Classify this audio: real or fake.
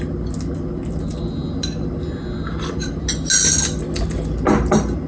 real